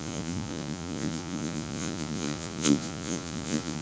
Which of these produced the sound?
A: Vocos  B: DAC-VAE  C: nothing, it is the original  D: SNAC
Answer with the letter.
A